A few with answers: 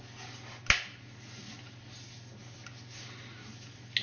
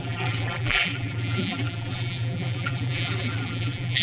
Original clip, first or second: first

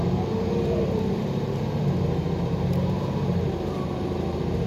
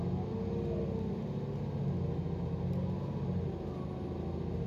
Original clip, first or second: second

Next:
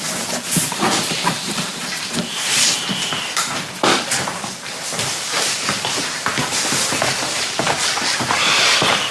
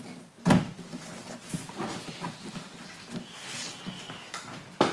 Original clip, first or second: second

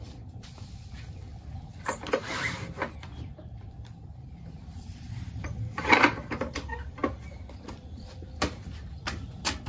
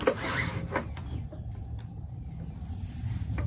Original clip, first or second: second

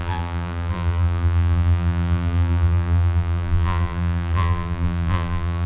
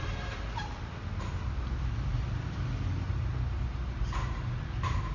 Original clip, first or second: second